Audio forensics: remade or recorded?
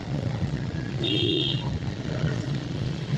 remade